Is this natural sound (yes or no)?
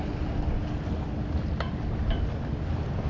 yes